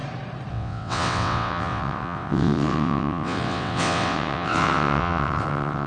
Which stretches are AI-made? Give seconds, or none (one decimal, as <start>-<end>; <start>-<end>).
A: 0.5-5.9